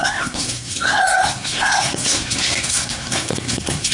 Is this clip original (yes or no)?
no